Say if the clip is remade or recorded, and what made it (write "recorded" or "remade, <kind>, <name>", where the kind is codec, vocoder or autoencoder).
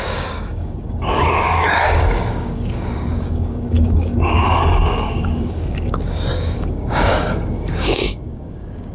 remade, codec, DAC